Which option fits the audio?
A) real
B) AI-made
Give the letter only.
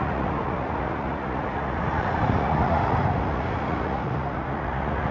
B